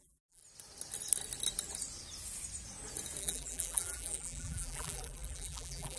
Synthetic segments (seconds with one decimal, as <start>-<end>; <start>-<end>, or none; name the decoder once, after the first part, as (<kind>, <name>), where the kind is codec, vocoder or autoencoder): 0.0-0.4 (vocoder, BigVGAN v2); 3.2-6.0